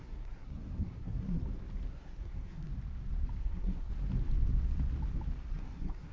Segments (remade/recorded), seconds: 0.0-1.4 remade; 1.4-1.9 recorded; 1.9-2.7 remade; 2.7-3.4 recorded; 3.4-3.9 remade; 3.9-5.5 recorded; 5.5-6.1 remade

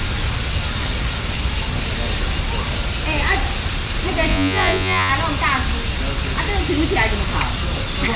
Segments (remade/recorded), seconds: 0.0-4.3 recorded; 4.3-5.1 remade; 5.1-8.2 recorded

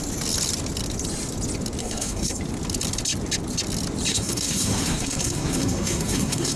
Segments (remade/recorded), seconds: 0.0-1.8 recorded; 1.8-2.4 remade; 2.4-4.1 recorded; 4.1-6.6 remade

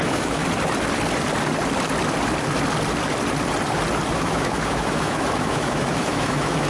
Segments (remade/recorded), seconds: 0.0-0.4 remade; 0.4-4.1 recorded; 4.1-6.7 remade

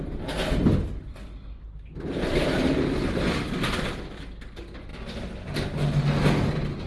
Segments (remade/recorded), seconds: 0.0-6.9 recorded

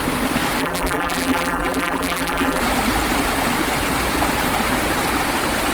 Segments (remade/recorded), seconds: 0.0-0.6 recorded; 0.6-2.6 remade; 2.6-5.7 recorded

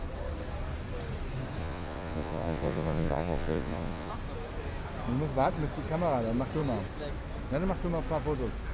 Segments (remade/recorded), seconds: 0.0-1.6 recorded; 1.6-4.1 remade; 4.1-8.7 recorded

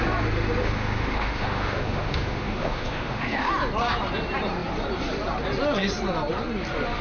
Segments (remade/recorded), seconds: 0.0-0.6 recorded; 0.6-3.5 remade; 3.5-7.0 recorded